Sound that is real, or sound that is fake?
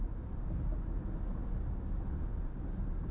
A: real